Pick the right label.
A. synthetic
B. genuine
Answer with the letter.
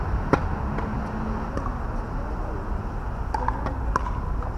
B